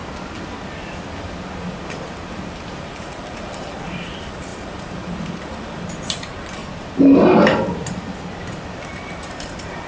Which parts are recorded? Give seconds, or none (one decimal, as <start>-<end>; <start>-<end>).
0.0-2.8; 6.6-8.8